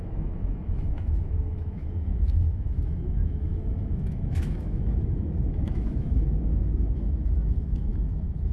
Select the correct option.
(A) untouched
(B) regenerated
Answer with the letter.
B